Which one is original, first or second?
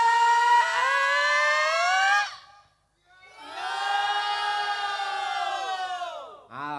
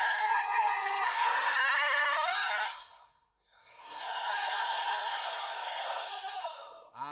first